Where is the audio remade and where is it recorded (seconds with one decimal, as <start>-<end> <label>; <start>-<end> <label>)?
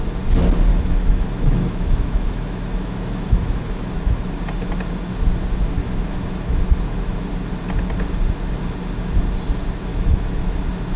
0.0-0.7 recorded; 0.7-4.4 remade; 4.4-5.8 recorded; 5.8-6.5 remade; 6.5-9.9 recorded; 9.9-10.6 remade; 10.6-11.0 recorded